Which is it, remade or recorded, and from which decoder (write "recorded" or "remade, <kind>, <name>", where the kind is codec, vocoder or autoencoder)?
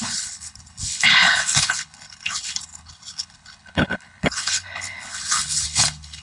remade, codec, HILCodec